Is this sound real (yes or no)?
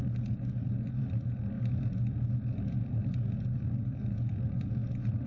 yes